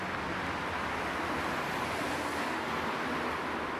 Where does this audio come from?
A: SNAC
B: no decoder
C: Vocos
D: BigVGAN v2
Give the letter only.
B